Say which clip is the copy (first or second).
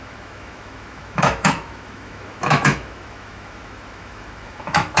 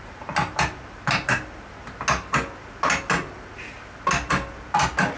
first